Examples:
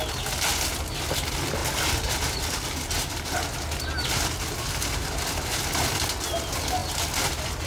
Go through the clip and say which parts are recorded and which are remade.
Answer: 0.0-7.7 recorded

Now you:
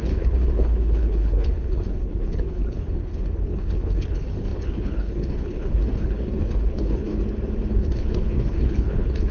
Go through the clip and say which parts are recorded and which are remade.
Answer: 0.0-7.2 remade; 7.2-7.7 recorded; 7.7-9.3 remade

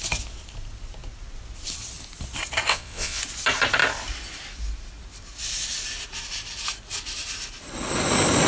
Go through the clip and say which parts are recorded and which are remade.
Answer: 0.0-2.7 recorded; 2.7-3.2 remade; 3.2-8.5 recorded

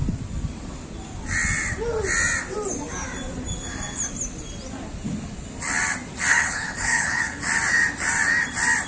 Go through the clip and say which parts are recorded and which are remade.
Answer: 0.0-6.3 recorded; 6.3-7.4 remade; 7.4-8.9 recorded

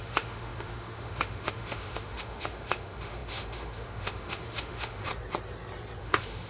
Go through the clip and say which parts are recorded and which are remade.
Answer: 0.0-5.1 remade; 5.1-6.0 recorded; 6.0-6.5 remade

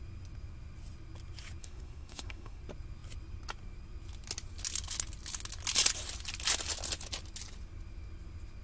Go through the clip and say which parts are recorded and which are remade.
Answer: 0.0-1.6 recorded; 1.6-2.6 remade; 2.6-8.6 recorded

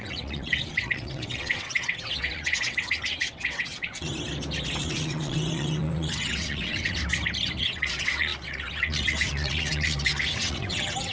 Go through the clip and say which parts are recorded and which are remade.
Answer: 0.0-4.1 remade; 4.1-4.8 recorded; 4.8-7.0 remade; 7.0-7.6 recorded; 7.6-11.1 remade